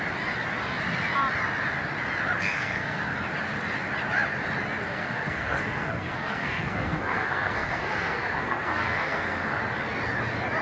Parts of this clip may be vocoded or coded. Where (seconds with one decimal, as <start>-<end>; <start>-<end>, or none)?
2.4-3.0; 4.9-9.6